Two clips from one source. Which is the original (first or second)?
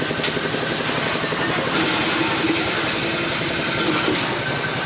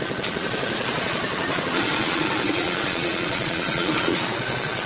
first